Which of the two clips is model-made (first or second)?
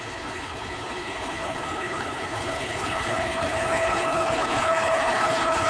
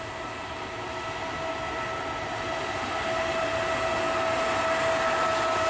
first